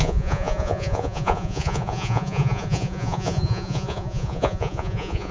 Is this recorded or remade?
remade